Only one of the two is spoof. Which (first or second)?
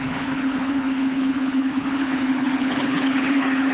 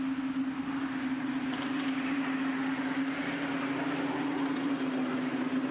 first